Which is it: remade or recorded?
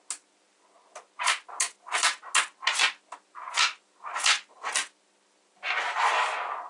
recorded